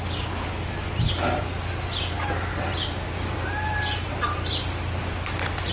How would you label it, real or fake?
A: real